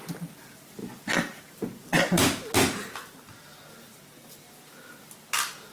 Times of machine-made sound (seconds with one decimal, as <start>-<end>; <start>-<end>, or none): none